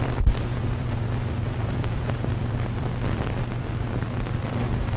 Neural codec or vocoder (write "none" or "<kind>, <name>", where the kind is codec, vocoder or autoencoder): vocoder, BigVGAN v2